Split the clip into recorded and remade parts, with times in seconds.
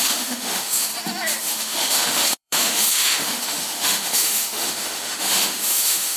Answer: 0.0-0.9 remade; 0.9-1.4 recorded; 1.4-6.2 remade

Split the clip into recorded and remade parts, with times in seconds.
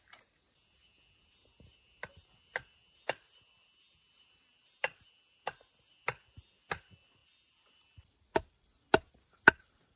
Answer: 0.0-10.0 recorded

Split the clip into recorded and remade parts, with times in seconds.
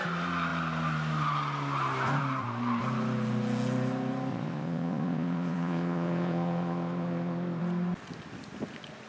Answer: 0.0-4.3 recorded; 4.3-7.6 remade; 7.6-9.1 recorded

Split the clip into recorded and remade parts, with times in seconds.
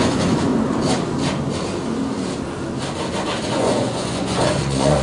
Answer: 0.0-0.5 remade; 0.5-3.5 recorded; 3.5-5.0 remade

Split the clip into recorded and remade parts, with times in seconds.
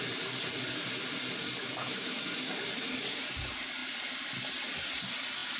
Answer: 0.0-1.6 recorded; 1.6-2.2 remade; 2.2-5.6 recorded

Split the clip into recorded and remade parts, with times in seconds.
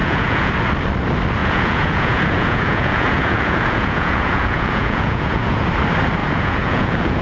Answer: 0.0-0.5 remade; 0.5-1.4 recorded; 1.4-5.7 remade; 5.7-6.2 recorded; 6.2-7.2 remade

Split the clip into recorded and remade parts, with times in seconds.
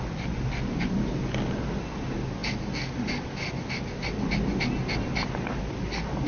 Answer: 0.0-6.3 recorded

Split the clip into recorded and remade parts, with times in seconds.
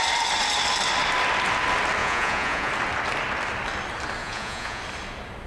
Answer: 0.0-2.0 recorded; 2.0-2.7 remade; 2.7-4.2 recorded; 4.2-4.8 remade; 4.8-5.5 recorded